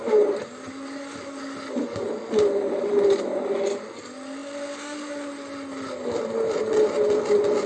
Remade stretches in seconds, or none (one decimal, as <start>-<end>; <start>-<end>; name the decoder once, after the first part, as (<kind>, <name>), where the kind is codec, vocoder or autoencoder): none